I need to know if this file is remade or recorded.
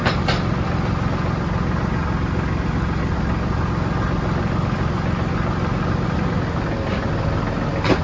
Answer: recorded